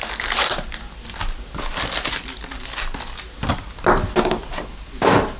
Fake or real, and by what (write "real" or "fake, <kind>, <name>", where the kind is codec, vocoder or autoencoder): real